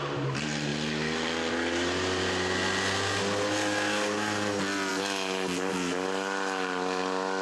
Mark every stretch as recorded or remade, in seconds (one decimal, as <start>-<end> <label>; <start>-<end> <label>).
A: 0.0-7.4 recorded